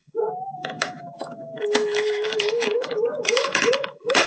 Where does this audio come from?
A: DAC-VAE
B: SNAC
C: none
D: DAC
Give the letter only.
A